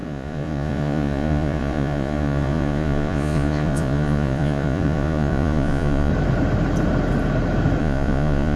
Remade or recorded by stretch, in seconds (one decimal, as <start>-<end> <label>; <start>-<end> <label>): 0.0-6.1 remade; 6.1-7.8 recorded; 7.8-8.6 remade